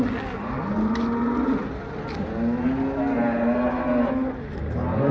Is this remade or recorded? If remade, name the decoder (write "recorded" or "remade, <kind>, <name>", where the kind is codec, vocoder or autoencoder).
recorded